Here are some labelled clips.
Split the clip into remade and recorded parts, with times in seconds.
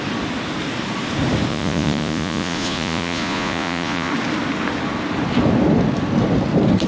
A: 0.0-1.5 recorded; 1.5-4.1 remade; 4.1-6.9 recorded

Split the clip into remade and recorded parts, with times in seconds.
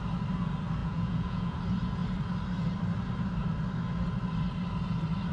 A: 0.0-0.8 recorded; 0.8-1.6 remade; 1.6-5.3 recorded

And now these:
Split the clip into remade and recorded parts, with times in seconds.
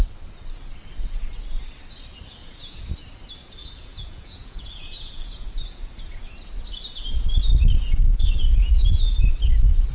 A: 0.0-2.4 recorded; 2.4-2.9 remade; 2.9-3.6 recorded; 3.6-6.2 remade; 6.2-8.0 recorded; 8.0-9.2 remade; 9.2-9.9 recorded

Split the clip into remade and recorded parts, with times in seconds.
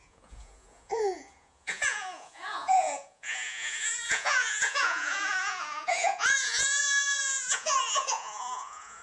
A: 0.0-9.0 remade